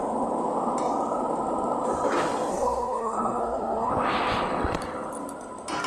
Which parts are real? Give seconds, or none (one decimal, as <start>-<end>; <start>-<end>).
0.0-2.5; 3.9-5.9

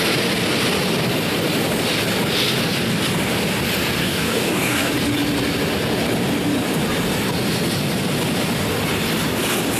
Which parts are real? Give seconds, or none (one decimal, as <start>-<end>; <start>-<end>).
0.0-4.0; 4.9-9.8

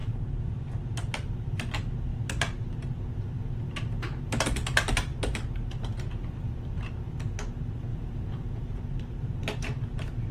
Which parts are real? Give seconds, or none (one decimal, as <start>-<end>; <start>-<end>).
0.0-7.9; 8.8-10.3

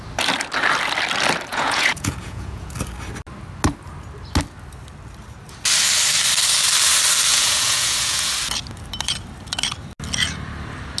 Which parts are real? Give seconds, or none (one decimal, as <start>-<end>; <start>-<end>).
0.0-1.5; 2.7-7.3; 8.3-11.0